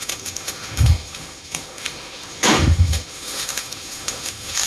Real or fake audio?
fake